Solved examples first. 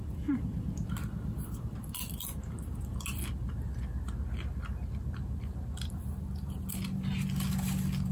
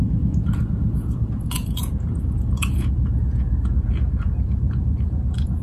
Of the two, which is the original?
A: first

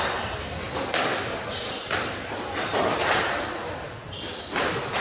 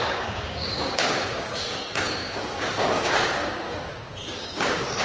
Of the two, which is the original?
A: first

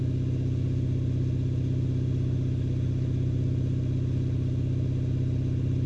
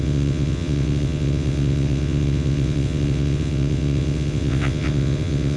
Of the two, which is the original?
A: first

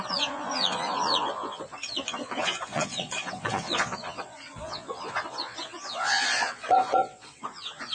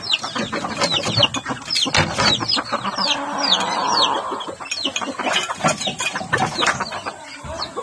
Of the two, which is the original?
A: second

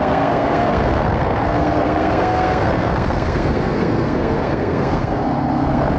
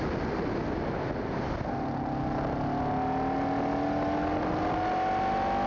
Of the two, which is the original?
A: second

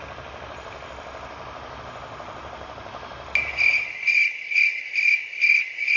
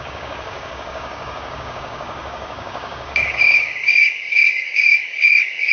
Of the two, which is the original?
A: first